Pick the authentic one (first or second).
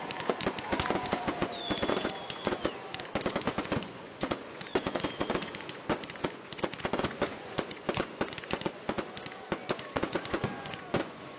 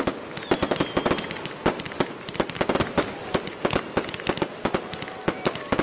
second